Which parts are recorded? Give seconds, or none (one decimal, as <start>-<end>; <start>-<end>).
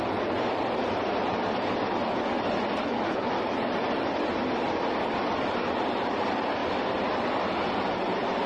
0.0-2.8; 3.3-8.5